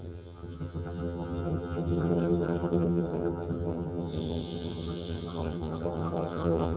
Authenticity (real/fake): fake